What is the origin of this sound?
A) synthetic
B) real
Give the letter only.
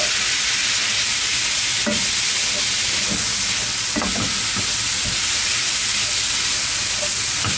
B